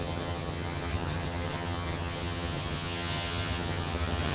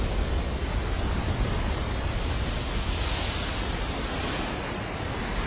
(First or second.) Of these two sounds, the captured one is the second